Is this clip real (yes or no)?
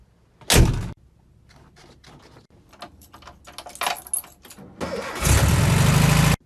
yes